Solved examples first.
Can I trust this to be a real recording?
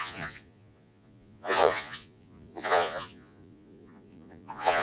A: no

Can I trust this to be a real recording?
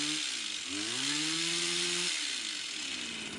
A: yes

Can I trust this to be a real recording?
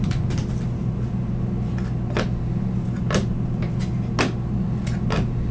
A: yes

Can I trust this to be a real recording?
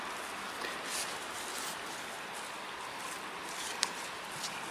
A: yes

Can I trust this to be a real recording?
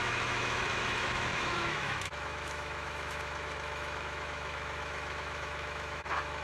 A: no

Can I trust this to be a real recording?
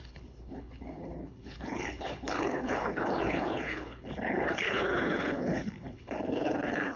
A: no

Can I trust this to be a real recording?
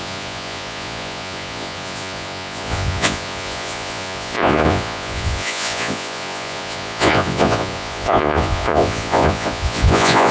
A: no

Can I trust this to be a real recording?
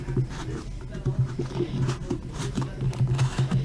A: yes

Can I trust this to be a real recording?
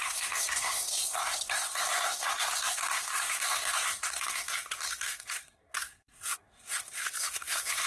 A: no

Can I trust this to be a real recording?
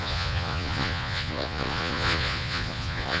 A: no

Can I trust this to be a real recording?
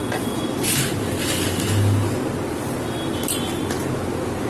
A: yes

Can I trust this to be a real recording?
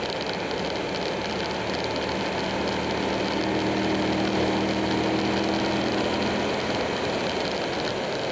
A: yes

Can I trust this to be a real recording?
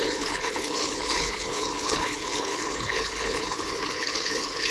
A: no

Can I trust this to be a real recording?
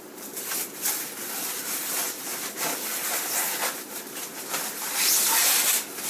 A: no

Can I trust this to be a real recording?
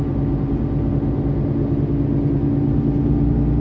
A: yes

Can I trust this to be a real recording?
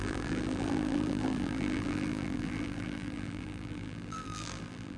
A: no